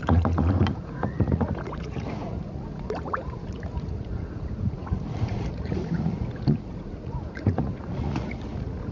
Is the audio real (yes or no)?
no